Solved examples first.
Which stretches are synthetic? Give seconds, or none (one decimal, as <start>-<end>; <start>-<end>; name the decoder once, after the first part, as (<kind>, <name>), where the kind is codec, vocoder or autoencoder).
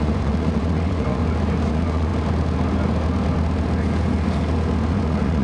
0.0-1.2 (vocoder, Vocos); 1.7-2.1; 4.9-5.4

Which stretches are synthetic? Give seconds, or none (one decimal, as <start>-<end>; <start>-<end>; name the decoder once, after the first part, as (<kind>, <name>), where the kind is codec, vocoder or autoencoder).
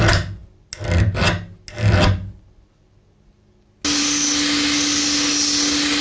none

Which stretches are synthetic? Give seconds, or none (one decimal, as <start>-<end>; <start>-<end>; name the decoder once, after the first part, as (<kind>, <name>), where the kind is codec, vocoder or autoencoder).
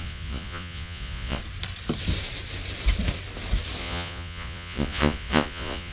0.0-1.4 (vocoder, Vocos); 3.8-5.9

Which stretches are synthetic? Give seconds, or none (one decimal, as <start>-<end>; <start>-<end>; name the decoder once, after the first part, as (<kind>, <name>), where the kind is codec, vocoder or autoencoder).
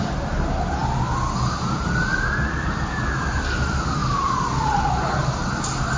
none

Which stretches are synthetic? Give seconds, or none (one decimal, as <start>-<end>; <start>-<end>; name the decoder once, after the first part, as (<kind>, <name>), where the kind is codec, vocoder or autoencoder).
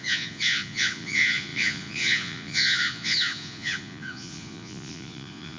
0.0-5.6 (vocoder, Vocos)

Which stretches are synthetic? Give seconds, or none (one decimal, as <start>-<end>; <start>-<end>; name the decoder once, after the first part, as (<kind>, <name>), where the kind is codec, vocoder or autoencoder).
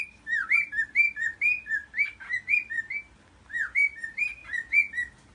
0.0-1.8 (vocoder, BigVGAN v2); 4.0-4.4